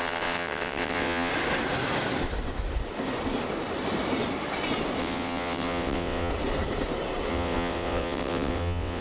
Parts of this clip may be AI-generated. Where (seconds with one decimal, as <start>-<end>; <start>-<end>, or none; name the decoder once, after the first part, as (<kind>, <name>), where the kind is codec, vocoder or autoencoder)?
0.0-1.3 (vocoder, WaveNeXt); 5.0-6.3; 7.3-9.0